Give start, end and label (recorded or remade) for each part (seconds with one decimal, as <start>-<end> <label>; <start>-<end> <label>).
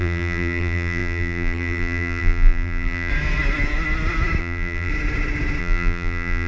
0.0-3.1 remade; 3.1-4.4 recorded; 4.4-4.9 remade; 4.9-5.6 recorded; 5.6-6.5 remade